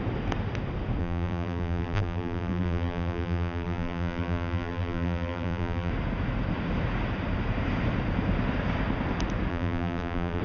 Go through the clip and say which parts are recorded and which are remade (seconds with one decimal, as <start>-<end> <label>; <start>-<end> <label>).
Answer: 0.0-1.0 recorded; 1.0-5.9 remade; 5.9-9.5 recorded; 9.5-10.4 remade